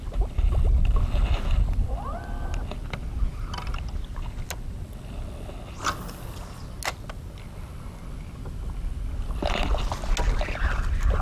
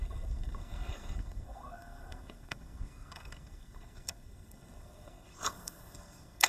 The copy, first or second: second